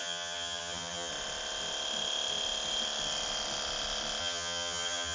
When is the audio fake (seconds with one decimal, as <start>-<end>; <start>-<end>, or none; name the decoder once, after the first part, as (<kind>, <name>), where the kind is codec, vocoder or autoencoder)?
0.0-1.1 (vocoder, HiFi-GAN); 4.2-5.1